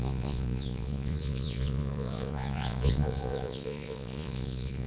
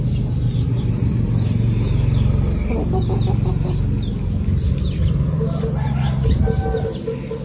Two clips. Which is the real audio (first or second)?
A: second